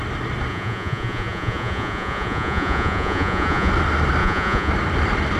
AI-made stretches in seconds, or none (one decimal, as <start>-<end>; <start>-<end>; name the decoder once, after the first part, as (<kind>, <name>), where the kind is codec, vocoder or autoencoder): 0.5-3.7 (vocoder, Vocos); 4.2-4.7